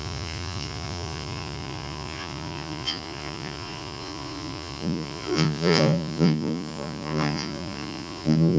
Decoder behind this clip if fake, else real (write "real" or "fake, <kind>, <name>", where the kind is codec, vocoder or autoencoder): fake, vocoder, Vocos